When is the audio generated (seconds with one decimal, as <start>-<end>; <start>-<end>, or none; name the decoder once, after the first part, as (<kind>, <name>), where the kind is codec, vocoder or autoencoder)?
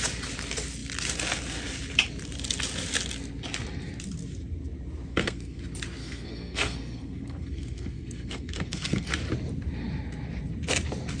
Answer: 5.1-5.6 (codec, SNAC); 6.0-9.1